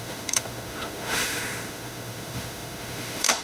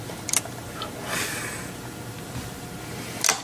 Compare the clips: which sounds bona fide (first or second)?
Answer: second